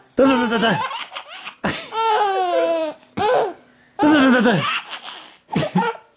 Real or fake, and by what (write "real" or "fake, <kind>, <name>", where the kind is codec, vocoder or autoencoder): real